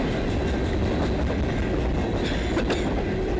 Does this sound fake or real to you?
real